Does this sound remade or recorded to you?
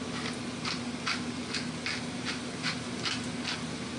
recorded